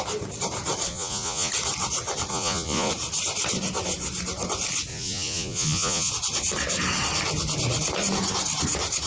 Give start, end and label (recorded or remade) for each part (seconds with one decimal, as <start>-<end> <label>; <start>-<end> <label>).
0.0-0.9 recorded; 0.9-1.5 remade; 1.5-2.3 recorded; 2.3-2.9 remade; 2.9-4.9 recorded; 4.9-6.1 remade; 6.1-9.1 recorded